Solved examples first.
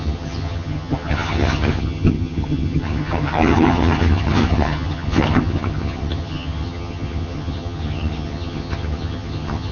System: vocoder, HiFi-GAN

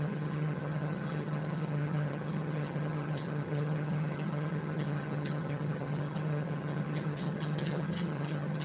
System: vocoder, HiFi-GAN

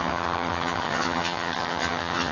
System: vocoder, HiFi-GAN